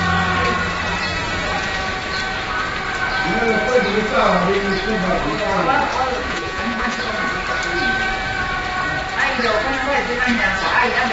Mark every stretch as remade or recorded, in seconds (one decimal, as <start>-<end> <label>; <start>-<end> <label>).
0.0-6.3 recorded; 6.3-7.0 remade; 7.0-11.1 recorded